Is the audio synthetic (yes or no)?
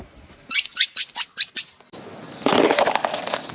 no